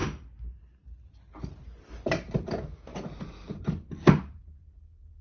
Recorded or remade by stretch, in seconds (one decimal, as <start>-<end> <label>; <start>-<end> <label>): 0.0-5.2 recorded